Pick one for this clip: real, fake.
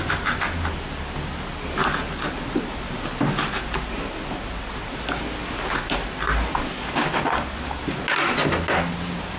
real